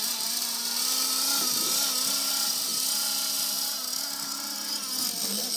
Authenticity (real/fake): real